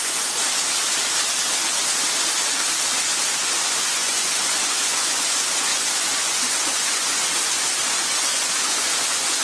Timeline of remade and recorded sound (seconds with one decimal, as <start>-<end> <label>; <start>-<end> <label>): 0.0-0.4 remade; 0.4-3.3 recorded; 3.3-9.4 remade